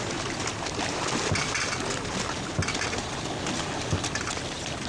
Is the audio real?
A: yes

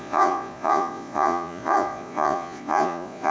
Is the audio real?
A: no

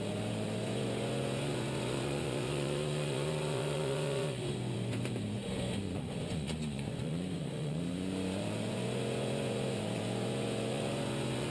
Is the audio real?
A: no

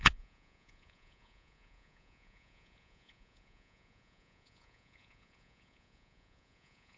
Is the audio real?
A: no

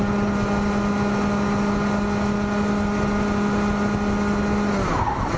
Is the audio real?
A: yes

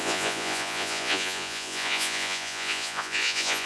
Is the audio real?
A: no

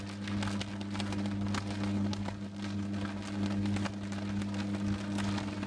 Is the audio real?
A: yes